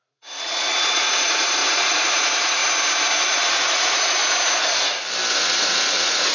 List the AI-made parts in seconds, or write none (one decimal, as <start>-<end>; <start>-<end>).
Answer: 0.0-2.6; 3.5-4.2; 5.3-6.3